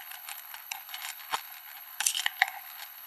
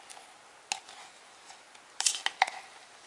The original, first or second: second